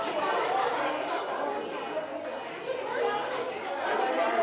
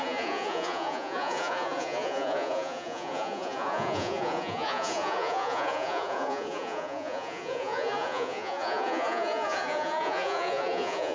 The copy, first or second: second